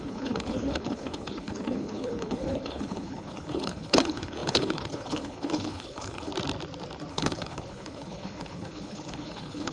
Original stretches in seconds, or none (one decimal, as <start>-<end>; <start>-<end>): 6.3-7.1